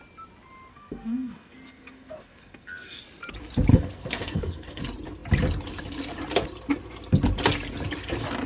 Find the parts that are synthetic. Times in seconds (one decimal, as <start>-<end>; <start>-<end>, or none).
0.7-3.0; 3.7-4.8